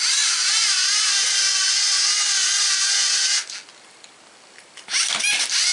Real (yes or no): yes